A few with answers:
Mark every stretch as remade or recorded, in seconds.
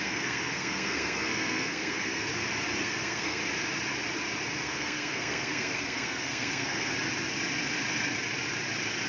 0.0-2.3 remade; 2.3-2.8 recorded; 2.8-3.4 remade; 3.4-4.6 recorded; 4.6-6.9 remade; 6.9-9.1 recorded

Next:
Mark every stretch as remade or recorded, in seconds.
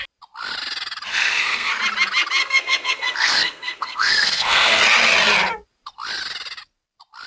0.0-1.1 recorded; 1.1-1.7 remade; 1.7-2.4 recorded; 2.4-4.8 remade; 4.8-7.3 recorded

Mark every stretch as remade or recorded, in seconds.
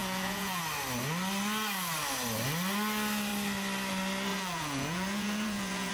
0.0-0.6 remade; 0.6-4.3 recorded; 4.3-5.9 remade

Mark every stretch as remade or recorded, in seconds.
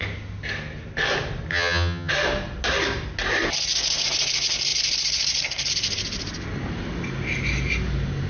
0.0-1.5 recorded; 1.5-2.1 remade; 2.1-8.3 recorded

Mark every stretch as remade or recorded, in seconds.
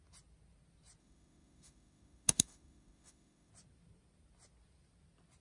0.0-1.0 recorded; 1.0-3.5 remade; 3.5-5.4 recorded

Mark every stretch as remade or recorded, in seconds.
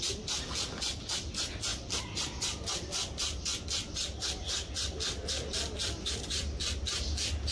0.0-7.5 recorded